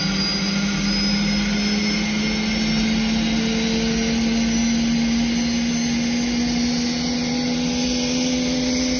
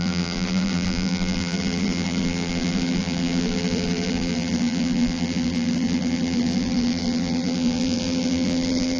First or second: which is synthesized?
second